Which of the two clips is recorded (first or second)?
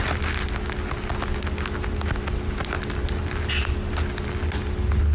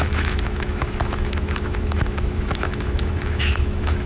first